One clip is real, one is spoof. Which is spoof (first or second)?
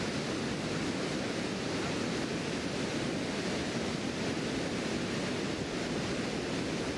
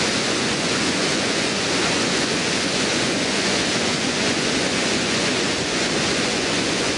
second